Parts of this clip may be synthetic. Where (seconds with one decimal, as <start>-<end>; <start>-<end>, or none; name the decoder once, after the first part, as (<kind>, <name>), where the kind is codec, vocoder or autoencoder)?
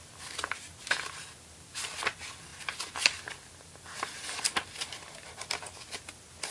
none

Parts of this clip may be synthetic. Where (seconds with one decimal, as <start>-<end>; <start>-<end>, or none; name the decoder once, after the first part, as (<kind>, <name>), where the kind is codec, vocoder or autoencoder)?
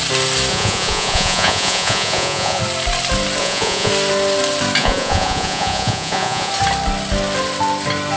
0.5-2.6 (vocoder, Vocos); 3.4-3.9; 4.8-6.5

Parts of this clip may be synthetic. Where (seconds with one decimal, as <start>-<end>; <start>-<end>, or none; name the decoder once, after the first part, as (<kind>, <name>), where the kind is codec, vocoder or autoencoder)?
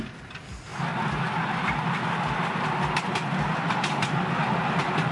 none